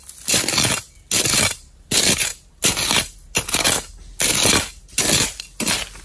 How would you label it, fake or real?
real